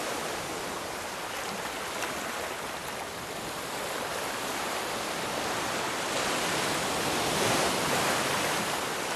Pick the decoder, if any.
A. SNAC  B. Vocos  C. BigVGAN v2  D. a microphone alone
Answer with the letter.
D